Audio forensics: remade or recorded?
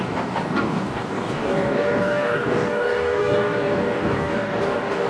remade